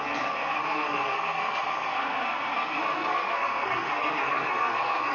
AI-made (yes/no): yes